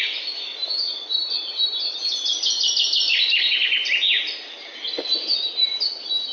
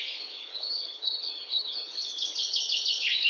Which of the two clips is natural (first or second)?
first